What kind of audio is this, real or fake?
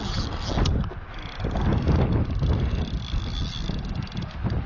real